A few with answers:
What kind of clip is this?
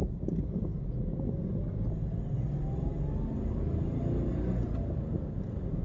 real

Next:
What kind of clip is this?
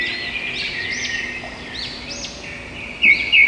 real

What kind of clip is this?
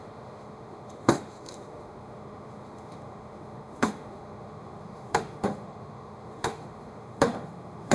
fake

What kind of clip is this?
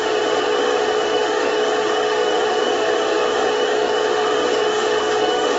fake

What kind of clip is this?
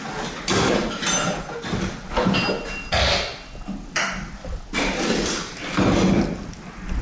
real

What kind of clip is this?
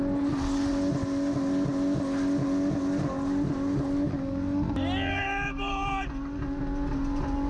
real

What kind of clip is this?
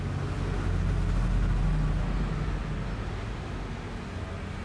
real